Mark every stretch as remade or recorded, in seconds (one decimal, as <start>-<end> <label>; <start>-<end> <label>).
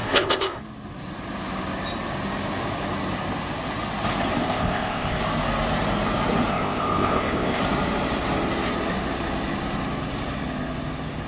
0.0-0.6 remade; 0.6-4.4 recorded; 4.4-5.2 remade; 5.2-6.5 recorded; 6.5-7.6 remade; 7.6-11.3 recorded